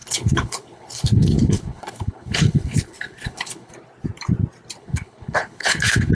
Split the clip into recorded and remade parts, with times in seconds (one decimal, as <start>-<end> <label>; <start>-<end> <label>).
0.0-3.7 remade; 3.7-4.8 recorded; 4.8-6.1 remade